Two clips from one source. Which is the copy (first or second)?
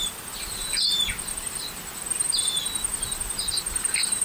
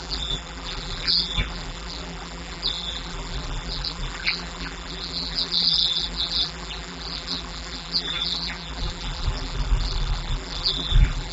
second